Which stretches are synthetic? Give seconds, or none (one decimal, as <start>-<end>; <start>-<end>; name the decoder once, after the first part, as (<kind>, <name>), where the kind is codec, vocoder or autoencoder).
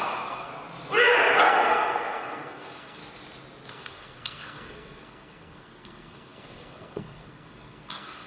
0.0-0.5 (codec, SNAC); 1.3-3.0; 3.7-8.3